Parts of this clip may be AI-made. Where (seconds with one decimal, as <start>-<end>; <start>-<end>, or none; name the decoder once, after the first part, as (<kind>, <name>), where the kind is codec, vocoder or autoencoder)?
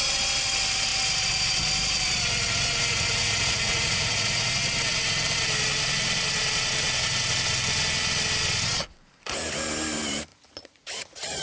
3.2-4.5 (vocoder, Vocos); 10.3-11.4